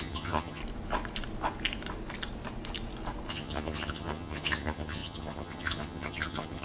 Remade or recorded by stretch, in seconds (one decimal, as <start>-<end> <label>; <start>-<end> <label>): 0.0-0.6 remade; 0.6-3.3 recorded; 3.3-6.6 remade